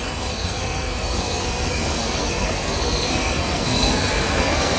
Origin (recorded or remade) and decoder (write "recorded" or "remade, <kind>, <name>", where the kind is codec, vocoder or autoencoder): remade, codec, SNAC